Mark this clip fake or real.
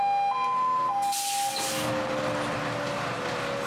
real